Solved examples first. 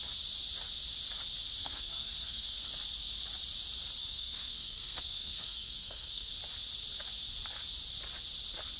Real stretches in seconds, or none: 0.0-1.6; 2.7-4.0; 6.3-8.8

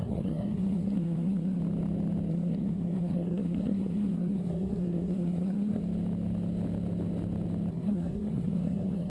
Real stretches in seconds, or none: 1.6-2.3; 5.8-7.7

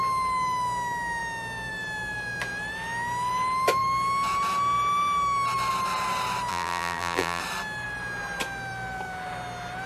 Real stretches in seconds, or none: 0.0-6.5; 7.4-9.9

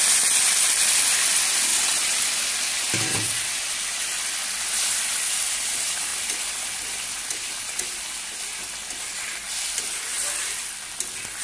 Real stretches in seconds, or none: 0.0-1.7; 2.2-3.1; 4.0-11.4